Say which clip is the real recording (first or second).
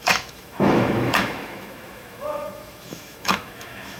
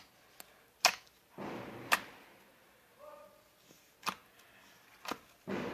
second